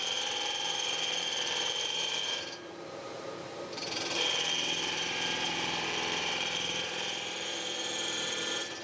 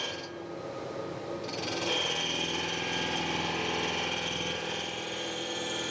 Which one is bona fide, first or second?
second